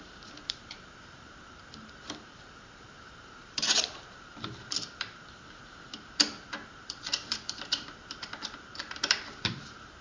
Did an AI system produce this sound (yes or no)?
yes